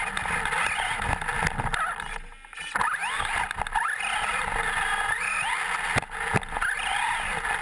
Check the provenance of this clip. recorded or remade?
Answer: recorded